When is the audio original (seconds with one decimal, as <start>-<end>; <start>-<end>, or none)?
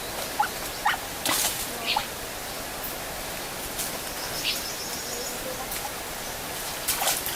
0.0-7.4